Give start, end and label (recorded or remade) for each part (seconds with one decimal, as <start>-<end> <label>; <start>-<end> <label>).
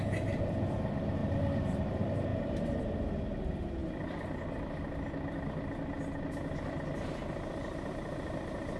0.0-8.8 recorded